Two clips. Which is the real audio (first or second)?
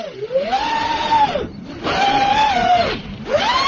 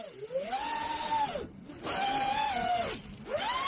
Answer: second